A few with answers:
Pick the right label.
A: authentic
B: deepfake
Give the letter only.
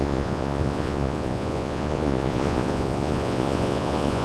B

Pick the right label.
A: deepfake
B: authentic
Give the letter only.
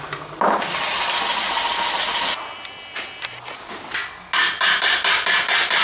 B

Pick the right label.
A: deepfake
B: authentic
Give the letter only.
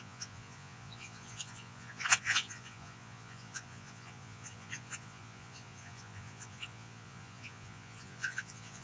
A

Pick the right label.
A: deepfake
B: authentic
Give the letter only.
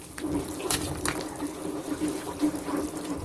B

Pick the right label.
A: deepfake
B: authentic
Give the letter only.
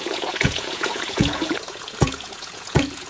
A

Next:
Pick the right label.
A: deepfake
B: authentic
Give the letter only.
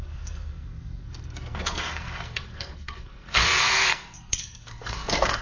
A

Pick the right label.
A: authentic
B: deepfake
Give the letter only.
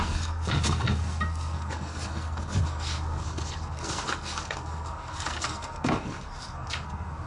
B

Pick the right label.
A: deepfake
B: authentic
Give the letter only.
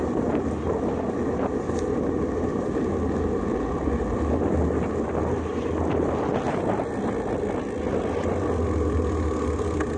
B